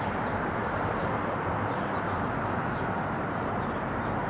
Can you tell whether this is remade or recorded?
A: remade